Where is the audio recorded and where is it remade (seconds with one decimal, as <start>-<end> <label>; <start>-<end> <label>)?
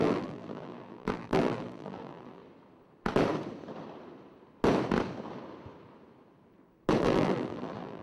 0.0-2.4 remade; 2.4-7.0 recorded; 7.0-8.0 remade